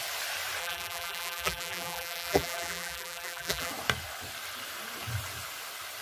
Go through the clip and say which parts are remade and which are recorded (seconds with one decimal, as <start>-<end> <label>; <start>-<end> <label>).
0.0-0.6 recorded; 0.6-3.7 remade; 3.7-6.0 recorded